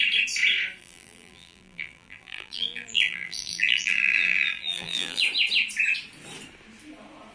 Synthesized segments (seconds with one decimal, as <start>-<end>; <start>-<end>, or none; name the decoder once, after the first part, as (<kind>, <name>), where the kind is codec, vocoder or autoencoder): 0.8-5.2 (vocoder, BigVGAN v2)